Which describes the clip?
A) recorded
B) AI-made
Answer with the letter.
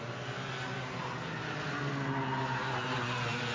A